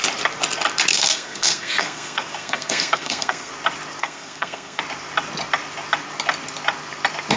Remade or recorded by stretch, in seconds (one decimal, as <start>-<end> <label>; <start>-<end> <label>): 0.0-0.9 recorded; 0.9-3.5 remade; 3.5-4.0 recorded; 4.0-4.8 remade; 4.8-7.4 recorded